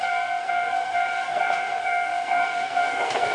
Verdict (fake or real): fake